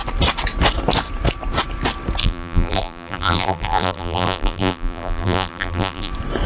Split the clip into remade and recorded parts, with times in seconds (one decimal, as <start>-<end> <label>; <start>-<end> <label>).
0.0-2.2 recorded; 2.2-6.1 remade; 6.1-6.5 recorded